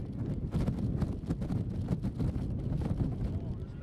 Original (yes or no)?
yes